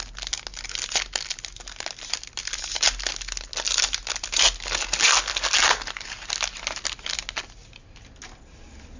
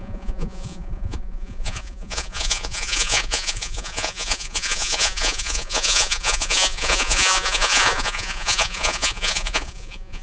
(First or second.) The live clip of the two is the first